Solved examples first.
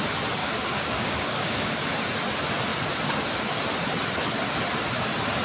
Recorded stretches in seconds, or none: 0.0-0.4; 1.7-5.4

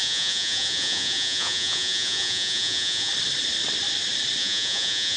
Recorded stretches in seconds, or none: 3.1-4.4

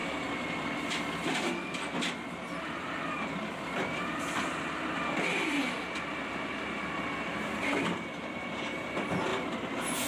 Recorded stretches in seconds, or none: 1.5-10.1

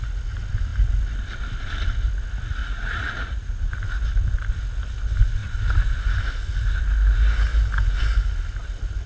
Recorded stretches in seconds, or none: 0.0-2.6; 3.7-9.1

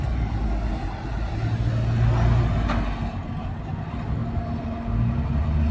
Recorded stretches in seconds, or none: 0.0-5.7

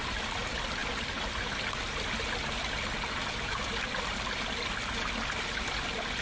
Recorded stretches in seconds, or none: 0.0-6.2

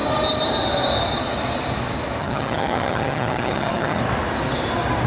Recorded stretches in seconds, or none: 0.0-2.2; 4.0-5.1

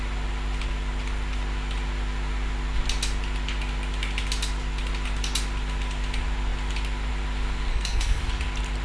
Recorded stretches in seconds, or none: 0.0-7.7; 8.2-8.8